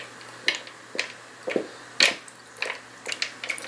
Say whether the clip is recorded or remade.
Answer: recorded